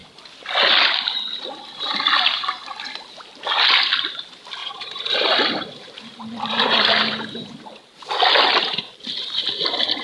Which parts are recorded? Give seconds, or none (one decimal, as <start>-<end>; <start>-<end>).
0.0-4.6; 7.5-10.0